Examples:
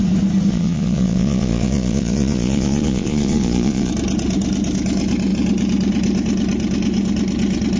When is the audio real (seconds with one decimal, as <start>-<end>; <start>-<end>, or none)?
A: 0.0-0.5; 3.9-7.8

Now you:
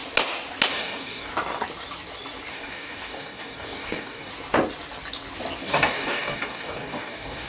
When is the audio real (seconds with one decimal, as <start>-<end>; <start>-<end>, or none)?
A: 0.0-0.7; 1.3-2.5; 4.3-5.6

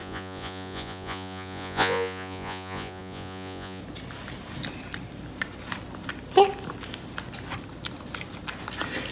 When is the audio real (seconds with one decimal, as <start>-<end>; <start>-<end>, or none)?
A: 3.8-9.1

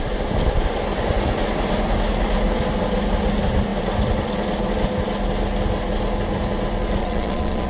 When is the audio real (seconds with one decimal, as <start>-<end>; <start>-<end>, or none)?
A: 0.0-7.0

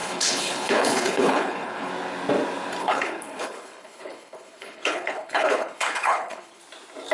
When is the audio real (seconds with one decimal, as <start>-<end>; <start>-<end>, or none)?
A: 1.9-2.8; 6.6-7.1

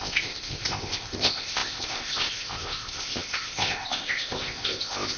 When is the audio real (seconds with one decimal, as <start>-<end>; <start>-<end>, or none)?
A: none

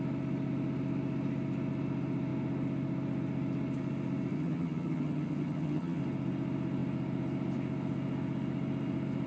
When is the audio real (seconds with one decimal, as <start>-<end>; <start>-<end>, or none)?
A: 0.0-4.3; 6.0-9.3